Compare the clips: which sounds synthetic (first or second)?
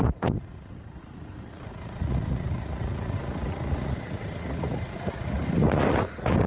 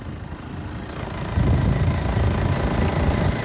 first